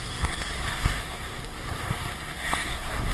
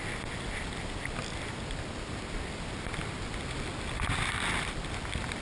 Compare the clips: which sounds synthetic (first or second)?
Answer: first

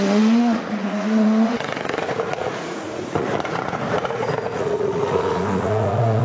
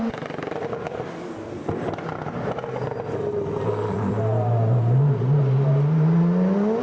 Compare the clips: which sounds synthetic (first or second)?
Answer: first